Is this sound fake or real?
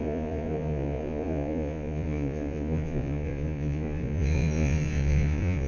fake